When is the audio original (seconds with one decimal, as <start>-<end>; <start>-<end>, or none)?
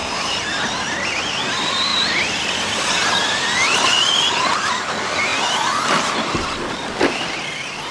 0.0-7.9